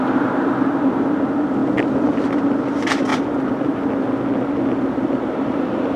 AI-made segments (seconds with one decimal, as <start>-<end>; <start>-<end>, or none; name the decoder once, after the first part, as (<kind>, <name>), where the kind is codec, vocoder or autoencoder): 3.1-3.9 (vocoder, BigVGAN v2)